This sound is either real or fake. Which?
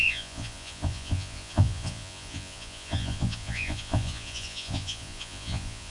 fake